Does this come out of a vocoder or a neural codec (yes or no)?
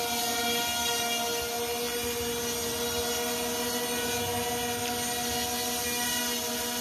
no